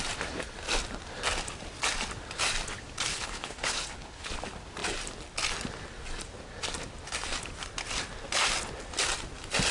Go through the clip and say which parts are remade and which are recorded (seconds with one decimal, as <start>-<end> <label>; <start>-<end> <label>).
0.0-3.1 recorded; 3.1-4.3 remade; 4.3-9.7 recorded